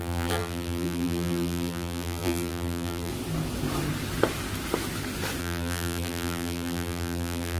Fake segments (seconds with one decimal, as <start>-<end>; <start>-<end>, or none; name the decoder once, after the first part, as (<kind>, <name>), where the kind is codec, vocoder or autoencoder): 0.0-3.1 (vocoder, BigVGAN v2); 5.4-7.6